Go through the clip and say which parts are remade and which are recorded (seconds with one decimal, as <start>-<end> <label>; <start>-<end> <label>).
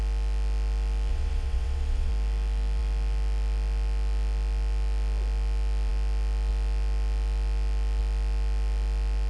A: 0.0-1.1 recorded; 1.1-2.1 remade; 2.1-9.3 recorded